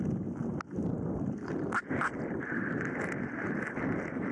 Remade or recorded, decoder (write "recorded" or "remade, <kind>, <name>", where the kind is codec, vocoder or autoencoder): recorded